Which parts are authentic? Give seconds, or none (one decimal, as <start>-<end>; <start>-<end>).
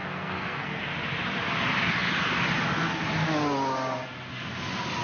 0.8-5.0